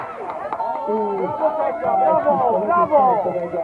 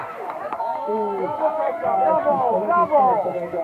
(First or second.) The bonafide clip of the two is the first